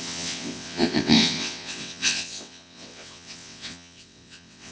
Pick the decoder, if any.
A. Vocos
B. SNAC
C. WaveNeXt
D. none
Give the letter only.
C